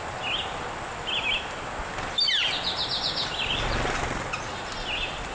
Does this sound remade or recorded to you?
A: recorded